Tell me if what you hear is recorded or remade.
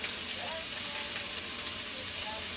recorded